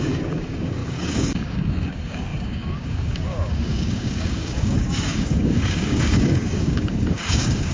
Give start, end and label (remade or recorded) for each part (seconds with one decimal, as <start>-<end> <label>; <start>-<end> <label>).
0.0-7.7 remade

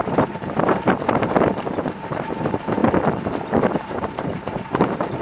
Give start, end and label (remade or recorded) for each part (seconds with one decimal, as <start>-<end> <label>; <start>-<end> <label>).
0.0-2.8 remade; 2.8-3.9 recorded; 3.9-5.2 remade

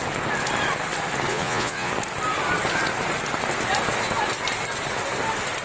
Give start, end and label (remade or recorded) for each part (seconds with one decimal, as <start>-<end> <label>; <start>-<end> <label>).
0.0-1.3 recorded; 1.3-1.9 remade; 1.9-5.6 recorded

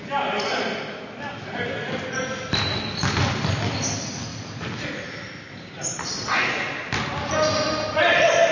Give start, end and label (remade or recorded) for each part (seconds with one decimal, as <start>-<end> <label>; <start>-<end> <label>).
0.0-8.5 recorded

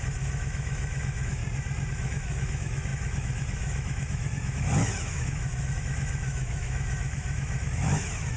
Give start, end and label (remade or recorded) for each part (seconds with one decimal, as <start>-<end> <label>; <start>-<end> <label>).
0.0-1.4 remade; 1.4-1.9 recorded; 1.9-8.4 remade